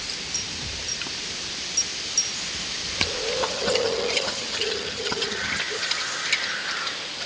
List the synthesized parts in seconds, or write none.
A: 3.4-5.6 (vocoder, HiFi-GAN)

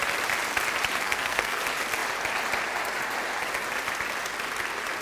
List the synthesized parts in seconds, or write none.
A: 1.0-1.6 (codec, SNAC)

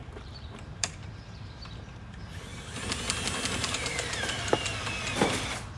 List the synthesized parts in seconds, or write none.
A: 0.0-1.8 (vocoder, BigVGAN v2); 2.5-3.0; 3.6-4.5

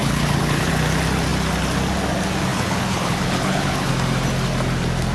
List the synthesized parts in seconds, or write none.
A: 0.0-0.7 (codec, HILCodec); 2.5-3.9

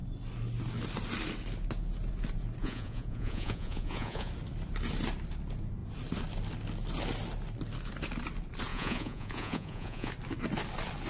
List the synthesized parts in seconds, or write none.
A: 2.6-4.3 (vocoder, Vocos); 8.7-10.1

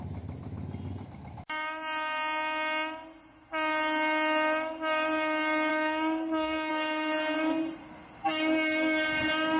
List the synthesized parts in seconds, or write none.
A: 5.7-6.7 (codec, DAC)

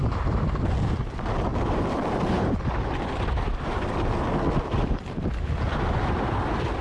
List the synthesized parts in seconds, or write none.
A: none

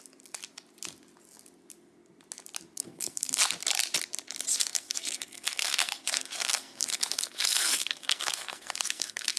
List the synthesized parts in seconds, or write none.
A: 2.8-3.4 (codec, SNAC); 4.5-9.4